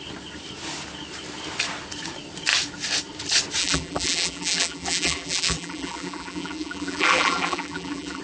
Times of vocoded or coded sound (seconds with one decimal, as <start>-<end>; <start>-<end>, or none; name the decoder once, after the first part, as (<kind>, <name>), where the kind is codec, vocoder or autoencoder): 3.6-8.2 (vocoder, BigVGAN v2)